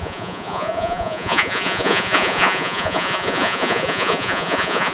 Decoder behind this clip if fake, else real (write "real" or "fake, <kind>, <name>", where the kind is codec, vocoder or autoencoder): fake, vocoder, Vocos